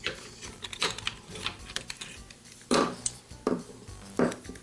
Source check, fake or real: fake